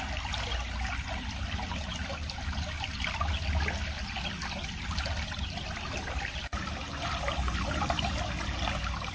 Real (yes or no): yes